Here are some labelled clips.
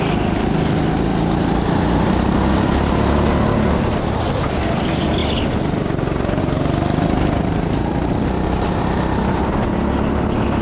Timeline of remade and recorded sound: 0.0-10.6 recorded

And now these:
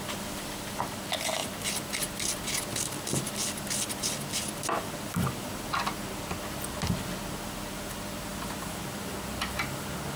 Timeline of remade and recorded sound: 0.0-10.2 recorded

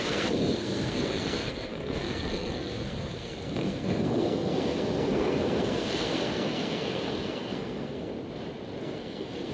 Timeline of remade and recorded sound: 0.0-8.1 remade; 8.1-8.8 recorded; 8.8-9.5 remade

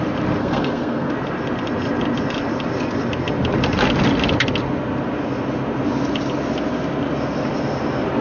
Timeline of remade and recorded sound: 0.0-0.4 recorded; 0.4-1.1 remade; 1.1-8.2 recorded

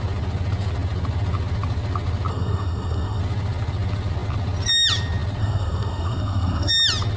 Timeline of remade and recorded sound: 0.0-2.3 recorded; 2.3-3.2 remade; 3.2-5.4 recorded; 5.4-6.7 remade; 6.7-7.2 recorded